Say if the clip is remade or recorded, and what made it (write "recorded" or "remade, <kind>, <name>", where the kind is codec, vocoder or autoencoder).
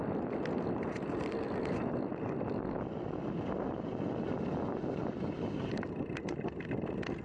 recorded